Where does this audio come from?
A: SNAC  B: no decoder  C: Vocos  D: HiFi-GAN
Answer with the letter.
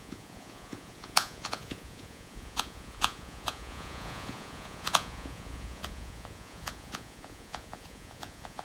C